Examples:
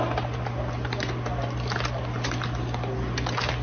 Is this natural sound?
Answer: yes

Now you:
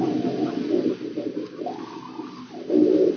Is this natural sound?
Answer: yes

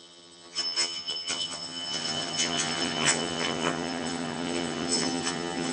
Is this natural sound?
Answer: no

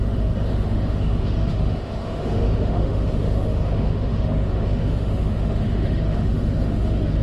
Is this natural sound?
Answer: no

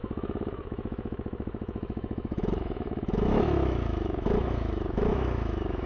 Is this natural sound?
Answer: no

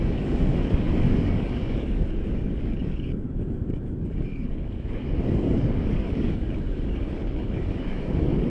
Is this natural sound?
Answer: no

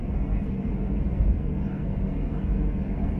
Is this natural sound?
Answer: no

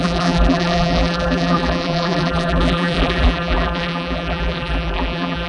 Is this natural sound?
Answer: no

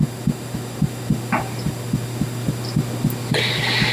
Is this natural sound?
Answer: yes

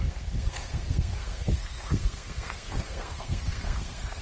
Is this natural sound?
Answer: no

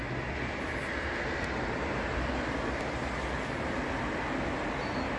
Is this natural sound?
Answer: yes